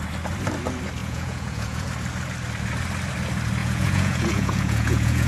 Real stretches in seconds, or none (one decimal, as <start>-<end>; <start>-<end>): 0.0-1.0; 1.9-3.6